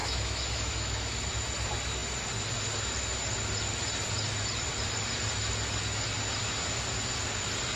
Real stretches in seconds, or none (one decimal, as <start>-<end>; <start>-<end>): 1.2-7.8